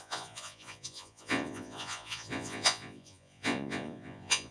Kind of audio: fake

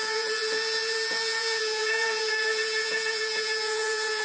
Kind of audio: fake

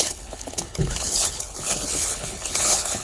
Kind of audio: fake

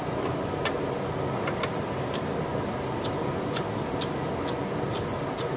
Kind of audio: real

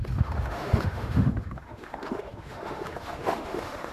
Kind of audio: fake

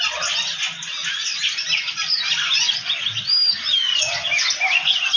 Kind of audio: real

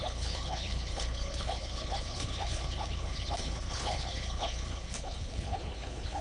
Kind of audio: fake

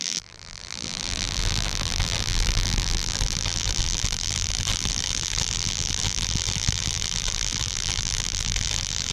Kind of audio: fake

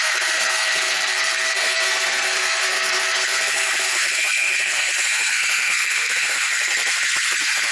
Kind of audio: fake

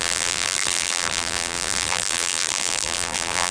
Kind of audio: fake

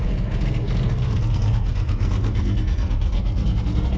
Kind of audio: fake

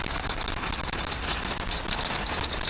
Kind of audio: real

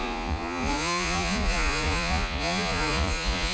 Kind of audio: fake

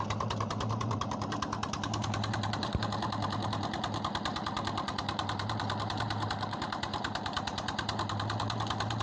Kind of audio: fake